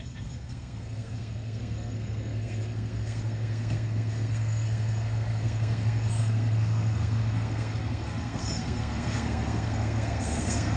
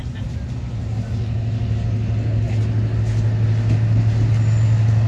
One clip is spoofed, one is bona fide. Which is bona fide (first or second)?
second